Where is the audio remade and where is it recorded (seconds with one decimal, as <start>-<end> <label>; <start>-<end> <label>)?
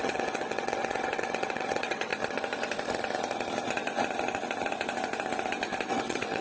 0.0-2.1 remade; 2.1-5.9 recorded; 5.9-6.4 remade